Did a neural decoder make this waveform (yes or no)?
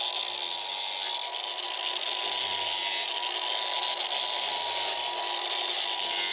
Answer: no